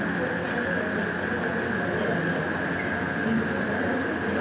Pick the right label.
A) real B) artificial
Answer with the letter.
A